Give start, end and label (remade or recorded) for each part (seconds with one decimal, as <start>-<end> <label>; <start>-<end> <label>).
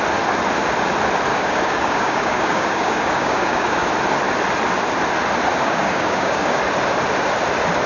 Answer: 0.0-1.3 recorded; 1.3-3.9 remade; 3.9-5.5 recorded; 5.5-6.6 remade; 6.6-7.9 recorded